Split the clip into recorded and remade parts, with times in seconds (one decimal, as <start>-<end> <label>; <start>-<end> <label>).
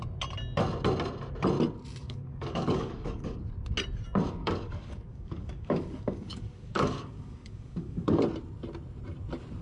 0.0-2.0 recorded; 2.0-3.4 remade; 3.4-4.4 recorded; 4.4-8.2 remade; 8.2-9.6 recorded